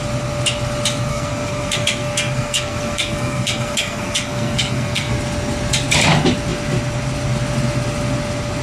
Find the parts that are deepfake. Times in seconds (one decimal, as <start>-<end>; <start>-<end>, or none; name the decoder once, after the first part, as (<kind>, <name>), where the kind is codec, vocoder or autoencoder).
1.1-5.1 (codec, SNAC)